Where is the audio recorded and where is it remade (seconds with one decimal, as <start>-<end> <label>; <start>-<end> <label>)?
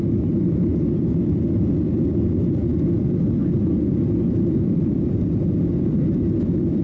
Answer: 0.0-0.7 recorded; 0.7-1.7 remade; 1.7-6.8 recorded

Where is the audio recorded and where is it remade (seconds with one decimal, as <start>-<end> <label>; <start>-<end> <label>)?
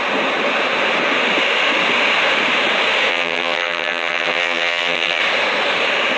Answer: 0.0-3.1 recorded; 3.1-5.2 remade; 5.2-6.2 recorded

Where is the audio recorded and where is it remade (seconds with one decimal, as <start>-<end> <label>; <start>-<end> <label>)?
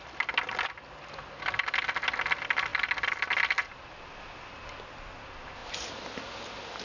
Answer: 0.0-6.8 recorded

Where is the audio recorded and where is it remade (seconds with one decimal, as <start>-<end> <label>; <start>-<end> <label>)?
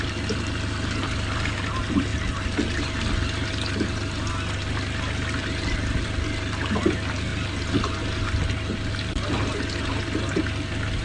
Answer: 0.0-11.0 recorded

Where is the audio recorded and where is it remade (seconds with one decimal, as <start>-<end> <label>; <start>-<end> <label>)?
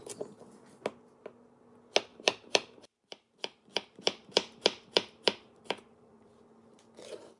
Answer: 0.0-2.1 recorded; 2.1-6.5 remade; 6.5-7.4 recorded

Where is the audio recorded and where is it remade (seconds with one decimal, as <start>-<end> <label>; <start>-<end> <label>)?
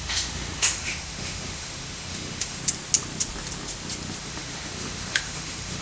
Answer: 0.0-2.6 remade; 2.6-4.2 recorded; 4.2-5.8 remade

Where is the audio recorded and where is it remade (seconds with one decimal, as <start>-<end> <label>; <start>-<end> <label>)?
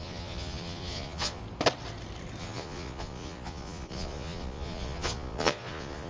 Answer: 0.0-1.4 remade; 1.4-2.4 recorded; 2.4-6.1 remade